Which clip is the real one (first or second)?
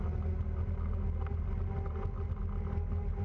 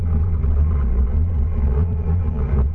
first